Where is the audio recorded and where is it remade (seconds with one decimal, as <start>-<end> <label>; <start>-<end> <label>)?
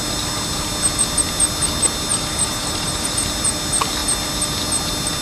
0.0-2.1 recorded; 2.1-3.1 remade; 3.1-5.2 recorded